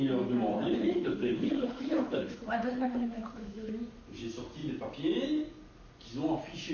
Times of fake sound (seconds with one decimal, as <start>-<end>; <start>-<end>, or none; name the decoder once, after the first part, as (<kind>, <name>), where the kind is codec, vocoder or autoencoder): 0.5-3.7 (codec, HILCodec)